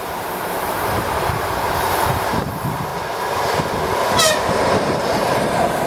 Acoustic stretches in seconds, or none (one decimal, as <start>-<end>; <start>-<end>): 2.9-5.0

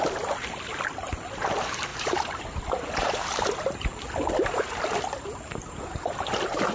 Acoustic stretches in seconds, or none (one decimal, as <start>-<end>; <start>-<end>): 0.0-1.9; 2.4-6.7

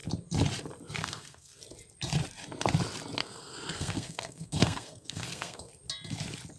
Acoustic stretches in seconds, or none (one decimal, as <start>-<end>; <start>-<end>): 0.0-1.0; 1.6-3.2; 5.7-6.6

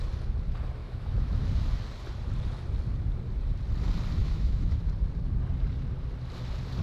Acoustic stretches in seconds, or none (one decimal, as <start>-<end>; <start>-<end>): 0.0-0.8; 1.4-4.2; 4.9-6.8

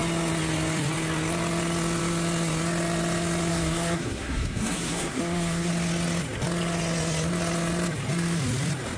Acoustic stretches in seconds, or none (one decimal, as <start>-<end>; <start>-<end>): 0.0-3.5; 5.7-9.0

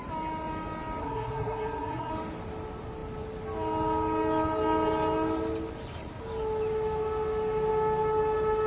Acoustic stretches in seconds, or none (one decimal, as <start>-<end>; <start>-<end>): 0.0-1.0; 2.1-8.7